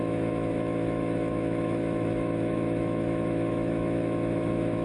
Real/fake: fake